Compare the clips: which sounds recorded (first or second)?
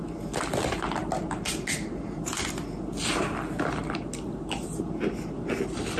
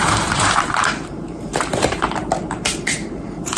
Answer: first